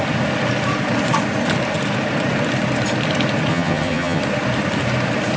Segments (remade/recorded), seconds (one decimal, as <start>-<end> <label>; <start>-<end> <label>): 0.0-3.5 recorded; 3.5-4.2 remade; 4.2-5.4 recorded